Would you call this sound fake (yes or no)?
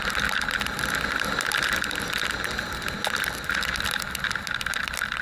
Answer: no